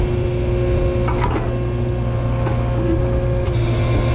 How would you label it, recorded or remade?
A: recorded